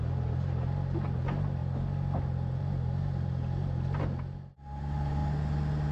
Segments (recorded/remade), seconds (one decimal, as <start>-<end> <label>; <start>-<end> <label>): 0.0-5.9 recorded